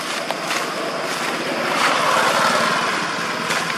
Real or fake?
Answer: real